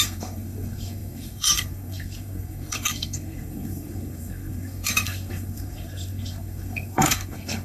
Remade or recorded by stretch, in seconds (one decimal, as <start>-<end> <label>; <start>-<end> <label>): 0.0-7.6 remade